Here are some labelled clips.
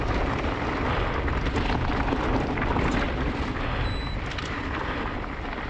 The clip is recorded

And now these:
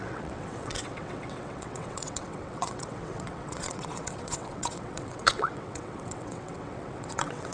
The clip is remade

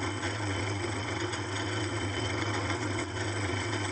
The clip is remade